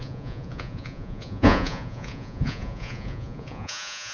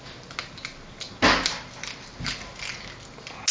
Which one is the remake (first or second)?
first